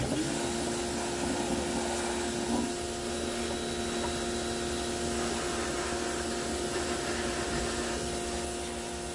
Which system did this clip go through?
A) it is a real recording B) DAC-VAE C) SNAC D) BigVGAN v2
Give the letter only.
A